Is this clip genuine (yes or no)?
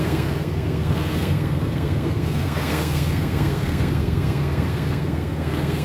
no